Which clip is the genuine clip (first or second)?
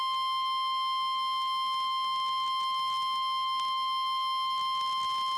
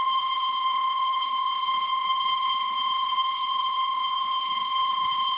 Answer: first